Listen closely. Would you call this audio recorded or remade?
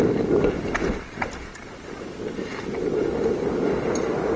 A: recorded